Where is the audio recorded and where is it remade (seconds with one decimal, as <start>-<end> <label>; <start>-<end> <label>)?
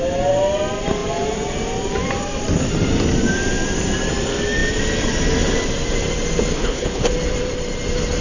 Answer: 0.0-6.5 recorded; 6.5-7.1 remade; 7.1-8.2 recorded